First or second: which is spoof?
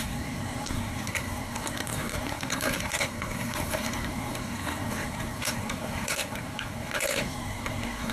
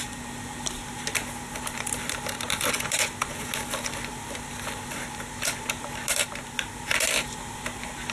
first